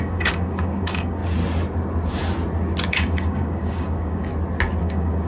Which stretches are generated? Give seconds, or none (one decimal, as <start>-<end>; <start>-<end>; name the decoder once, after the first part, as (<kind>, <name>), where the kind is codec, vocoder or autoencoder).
0.0-1.2 (codec, DAC); 2.9-4.3; 4.8-5.3